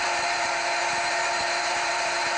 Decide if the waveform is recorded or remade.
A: remade